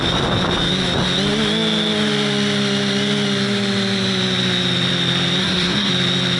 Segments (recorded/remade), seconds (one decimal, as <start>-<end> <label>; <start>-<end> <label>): 0.0-5.4 recorded; 5.4-5.9 remade; 5.9-6.4 recorded